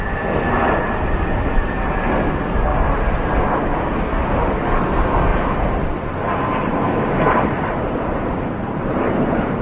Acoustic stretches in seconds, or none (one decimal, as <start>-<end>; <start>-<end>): 0.0-5.3